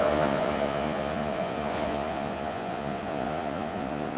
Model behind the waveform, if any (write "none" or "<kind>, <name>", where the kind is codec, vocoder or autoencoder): vocoder, Vocos